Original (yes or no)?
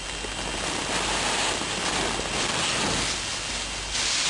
yes